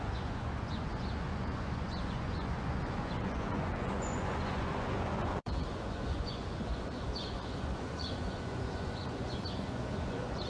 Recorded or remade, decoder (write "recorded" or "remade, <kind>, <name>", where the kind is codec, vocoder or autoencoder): remade, vocoder, Vocos